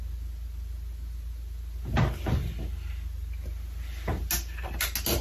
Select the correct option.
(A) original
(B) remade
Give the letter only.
A